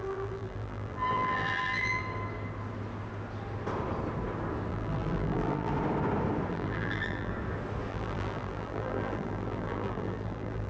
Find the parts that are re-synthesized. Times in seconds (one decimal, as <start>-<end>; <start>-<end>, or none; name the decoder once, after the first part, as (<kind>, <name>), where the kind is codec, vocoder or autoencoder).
0.0-2.0 (vocoder, BigVGAN v2); 4.7-5.7; 6.5-7.3; 7.9-10.7